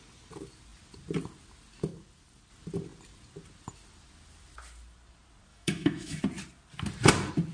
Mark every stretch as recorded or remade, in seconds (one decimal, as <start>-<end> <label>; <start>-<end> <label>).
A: 0.0-5.5 recorded; 5.5-6.2 remade; 6.2-7.5 recorded